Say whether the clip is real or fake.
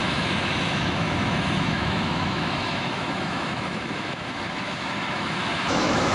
fake